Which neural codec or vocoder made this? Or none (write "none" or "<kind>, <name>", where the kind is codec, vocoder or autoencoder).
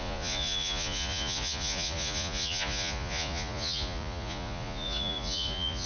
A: vocoder, Vocos